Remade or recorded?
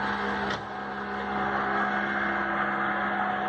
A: recorded